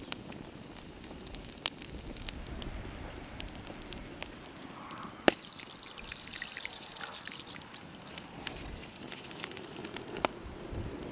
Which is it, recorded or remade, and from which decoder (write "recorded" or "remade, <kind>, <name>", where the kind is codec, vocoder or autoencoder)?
recorded